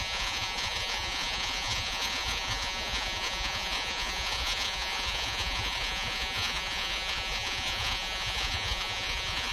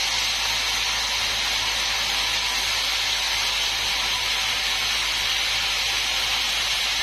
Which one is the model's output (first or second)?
first